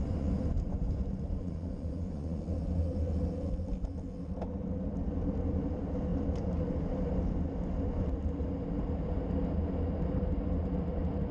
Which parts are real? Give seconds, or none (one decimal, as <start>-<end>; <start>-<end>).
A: 2.4-11.3